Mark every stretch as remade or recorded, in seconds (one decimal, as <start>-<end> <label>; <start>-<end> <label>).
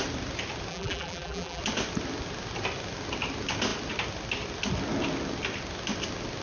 0.0-0.7 recorded; 0.7-1.6 remade; 1.6-6.4 recorded